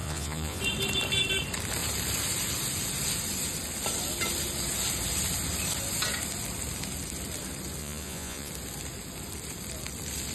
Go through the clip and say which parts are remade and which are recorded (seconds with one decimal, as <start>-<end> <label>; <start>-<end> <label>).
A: 0.0-0.6 remade; 0.6-7.8 recorded; 7.8-8.5 remade; 8.5-10.3 recorded